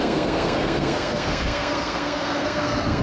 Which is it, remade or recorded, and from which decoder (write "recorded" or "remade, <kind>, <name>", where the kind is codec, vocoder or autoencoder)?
remade, codec, SNAC